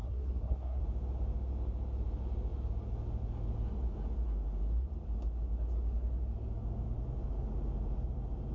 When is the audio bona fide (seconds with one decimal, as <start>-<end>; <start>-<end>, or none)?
0.8-8.5